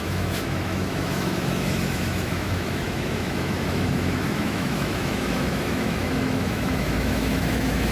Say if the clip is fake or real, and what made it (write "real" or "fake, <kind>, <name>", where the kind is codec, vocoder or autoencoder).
fake, autoencoder, DAC-VAE